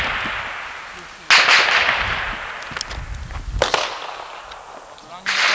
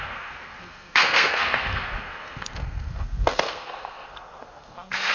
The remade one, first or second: second